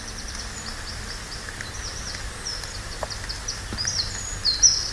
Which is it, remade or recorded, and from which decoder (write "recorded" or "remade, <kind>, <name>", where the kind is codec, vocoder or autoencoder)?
recorded